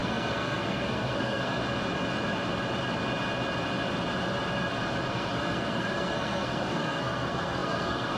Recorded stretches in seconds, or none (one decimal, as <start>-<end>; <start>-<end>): 1.6-5.1